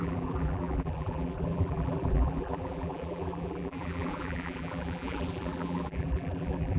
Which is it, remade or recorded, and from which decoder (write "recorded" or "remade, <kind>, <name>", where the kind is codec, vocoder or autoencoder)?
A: remade, vocoder, BigVGAN v2